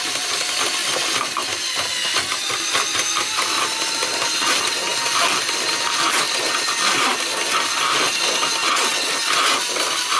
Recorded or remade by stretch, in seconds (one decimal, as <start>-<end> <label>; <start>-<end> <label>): 0.0-8.6 recorded; 8.6-9.1 remade; 9.1-10.2 recorded